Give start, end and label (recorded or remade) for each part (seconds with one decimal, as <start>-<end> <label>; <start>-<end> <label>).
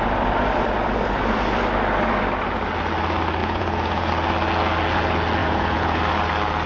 0.0-3.4 recorded; 3.4-4.1 remade; 4.1-5.4 recorded; 5.4-6.0 remade; 6.0-6.7 recorded